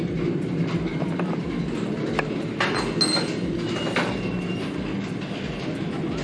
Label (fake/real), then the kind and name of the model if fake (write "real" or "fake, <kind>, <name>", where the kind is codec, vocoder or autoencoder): real